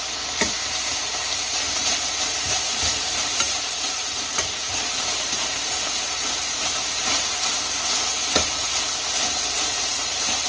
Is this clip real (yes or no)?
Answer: no